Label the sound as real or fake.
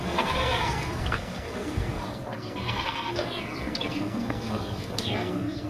fake